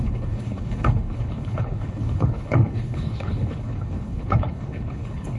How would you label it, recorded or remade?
remade